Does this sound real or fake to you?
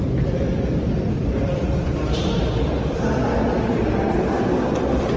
fake